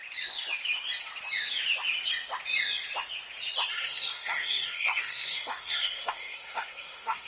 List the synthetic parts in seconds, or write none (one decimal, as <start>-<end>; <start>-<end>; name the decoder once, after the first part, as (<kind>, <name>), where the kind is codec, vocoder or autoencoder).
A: 3.7-7.3 (codec, SNAC)